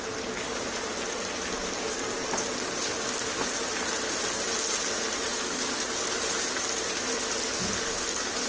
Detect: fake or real real